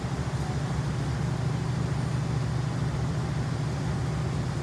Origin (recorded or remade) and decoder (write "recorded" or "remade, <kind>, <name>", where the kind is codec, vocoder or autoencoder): recorded